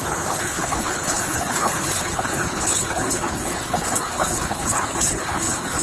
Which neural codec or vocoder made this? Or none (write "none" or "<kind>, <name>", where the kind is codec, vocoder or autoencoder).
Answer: codec, HILCodec